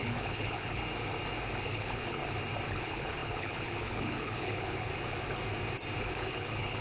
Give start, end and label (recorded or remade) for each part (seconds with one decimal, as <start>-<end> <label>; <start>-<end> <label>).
0.0-0.8 remade; 0.8-1.6 recorded; 1.6-2.2 remade; 2.2-2.7 recorded; 2.7-4.9 remade; 4.9-6.0 recorded; 6.0-6.8 remade

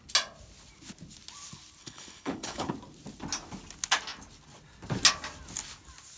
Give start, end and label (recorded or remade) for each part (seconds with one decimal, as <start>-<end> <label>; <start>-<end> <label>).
0.0-1.8 recorded; 1.8-2.7 remade; 2.7-6.2 recorded

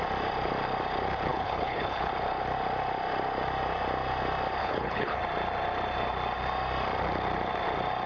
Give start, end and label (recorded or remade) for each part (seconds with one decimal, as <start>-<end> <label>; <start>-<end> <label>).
0.0-1.3 recorded; 1.3-2.1 remade; 2.1-4.6 recorded; 4.6-5.2 remade; 5.2-8.1 recorded

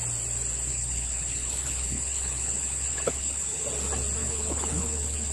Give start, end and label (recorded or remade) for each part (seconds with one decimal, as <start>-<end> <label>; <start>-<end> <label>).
0.0-0.7 recorded; 0.7-3.6 remade; 3.6-4.2 recorded; 4.2-5.3 remade

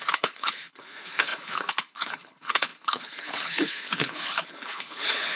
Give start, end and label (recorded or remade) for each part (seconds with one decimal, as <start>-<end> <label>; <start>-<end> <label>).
0.0-5.3 remade

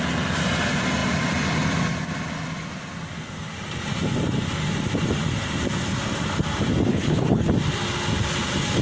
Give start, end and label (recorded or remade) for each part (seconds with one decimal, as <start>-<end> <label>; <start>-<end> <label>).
0.0-6.9 recorded; 6.9-7.5 remade; 7.5-8.8 recorded

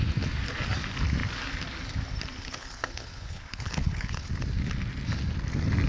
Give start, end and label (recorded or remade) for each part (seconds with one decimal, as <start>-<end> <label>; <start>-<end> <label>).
0.0-2.4 recorded; 2.4-4.3 remade; 4.3-5.9 recorded